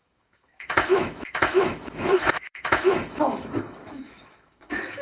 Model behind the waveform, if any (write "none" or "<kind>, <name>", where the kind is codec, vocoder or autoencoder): autoencoder, DAC-VAE